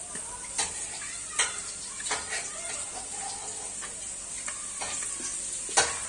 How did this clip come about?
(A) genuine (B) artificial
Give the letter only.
A